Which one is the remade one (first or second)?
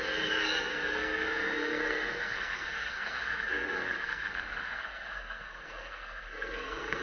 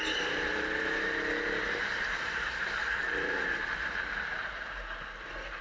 first